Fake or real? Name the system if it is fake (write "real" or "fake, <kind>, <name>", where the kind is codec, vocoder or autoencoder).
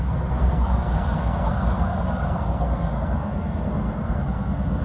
fake, codec, SNAC